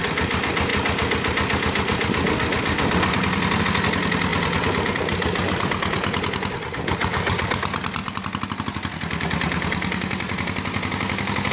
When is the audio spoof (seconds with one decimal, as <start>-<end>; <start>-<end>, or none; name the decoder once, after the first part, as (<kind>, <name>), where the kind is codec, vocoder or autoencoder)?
none